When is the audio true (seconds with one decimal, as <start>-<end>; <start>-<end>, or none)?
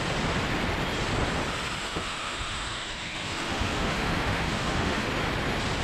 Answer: 0.0-1.8; 5.1-5.8